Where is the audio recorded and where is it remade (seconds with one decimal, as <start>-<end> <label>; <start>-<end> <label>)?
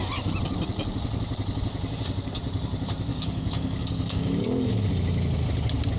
0.0-3.1 recorded; 3.1-4.9 remade; 4.9-6.0 recorded